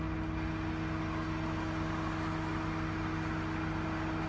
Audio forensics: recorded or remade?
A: recorded